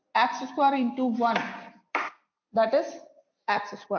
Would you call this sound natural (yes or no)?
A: yes